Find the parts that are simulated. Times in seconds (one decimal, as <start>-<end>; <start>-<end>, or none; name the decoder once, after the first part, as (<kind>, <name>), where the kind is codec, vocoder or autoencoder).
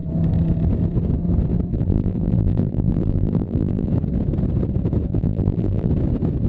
1.7-3.9 (vocoder, BigVGAN v2); 5.1-5.9